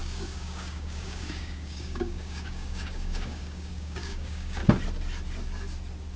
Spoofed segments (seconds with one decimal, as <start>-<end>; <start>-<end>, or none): 0.0-4.6